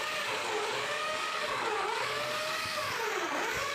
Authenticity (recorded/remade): remade